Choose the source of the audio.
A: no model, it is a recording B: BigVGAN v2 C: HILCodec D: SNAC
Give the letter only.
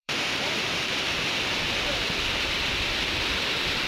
B